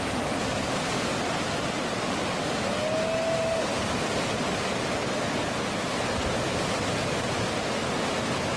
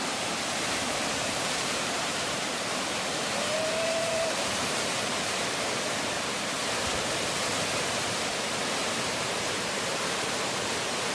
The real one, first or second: first